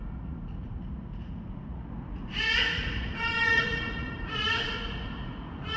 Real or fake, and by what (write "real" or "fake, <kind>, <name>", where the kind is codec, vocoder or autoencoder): fake, vocoder, Vocos